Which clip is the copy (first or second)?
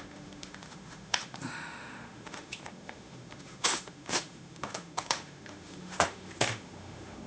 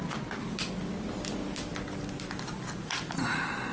first